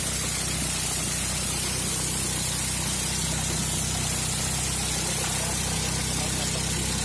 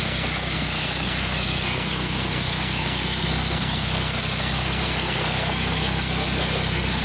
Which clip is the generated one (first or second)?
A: second